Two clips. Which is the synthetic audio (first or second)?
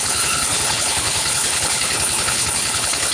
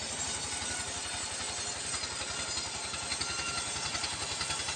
first